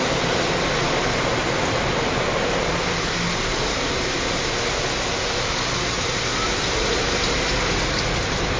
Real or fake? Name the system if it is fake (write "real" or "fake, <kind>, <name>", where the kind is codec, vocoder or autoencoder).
real